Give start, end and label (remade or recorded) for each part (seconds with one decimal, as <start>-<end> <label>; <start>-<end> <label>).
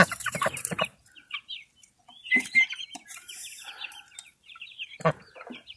0.0-0.9 remade; 0.9-2.2 recorded; 2.2-4.9 remade; 4.9-5.8 recorded